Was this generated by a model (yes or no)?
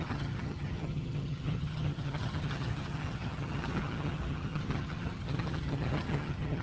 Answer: yes